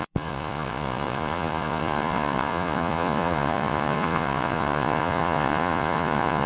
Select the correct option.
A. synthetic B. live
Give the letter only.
A